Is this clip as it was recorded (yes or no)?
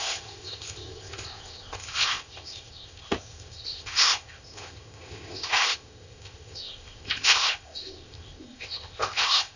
no